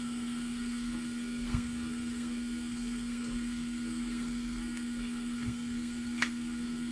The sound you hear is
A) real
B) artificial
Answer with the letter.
B